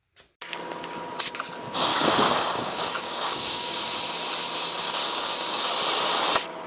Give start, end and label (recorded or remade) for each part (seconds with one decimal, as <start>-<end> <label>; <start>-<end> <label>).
0.0-1.9 recorded; 1.9-3.8 remade; 3.8-5.0 recorded; 5.0-5.7 remade; 5.7-6.7 recorded